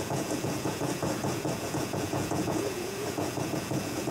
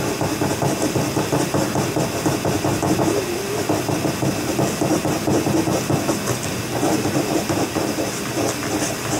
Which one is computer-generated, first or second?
first